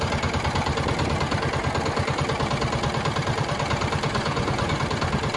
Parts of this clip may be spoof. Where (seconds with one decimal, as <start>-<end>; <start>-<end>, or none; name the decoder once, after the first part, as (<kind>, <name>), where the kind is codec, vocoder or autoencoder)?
4.1-4.8 (vocoder, Vocos)